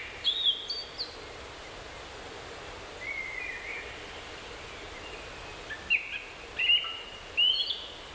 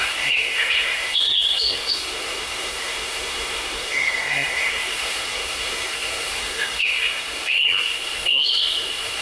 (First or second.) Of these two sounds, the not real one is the second